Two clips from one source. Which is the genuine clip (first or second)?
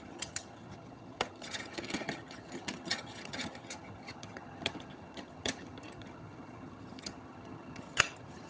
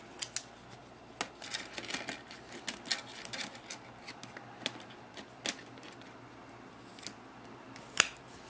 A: second